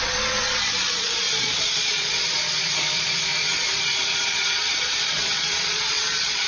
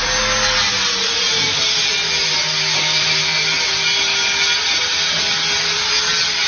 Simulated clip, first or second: first